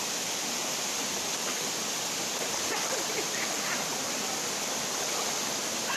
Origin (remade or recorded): recorded